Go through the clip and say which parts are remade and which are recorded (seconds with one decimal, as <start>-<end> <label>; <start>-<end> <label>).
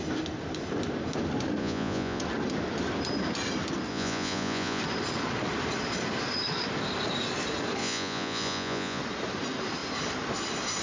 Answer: 0.0-1.6 recorded; 1.6-2.2 remade; 2.2-3.9 recorded; 3.9-4.8 remade; 4.8-7.8 recorded; 7.8-9.0 remade; 9.0-10.8 recorded